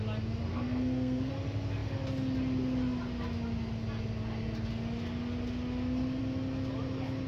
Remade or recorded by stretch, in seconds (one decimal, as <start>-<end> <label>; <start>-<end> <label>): 0.0-0.5 recorded; 0.5-1.3 remade; 1.3-7.3 recorded